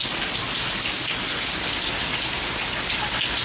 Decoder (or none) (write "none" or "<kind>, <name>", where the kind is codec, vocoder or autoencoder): none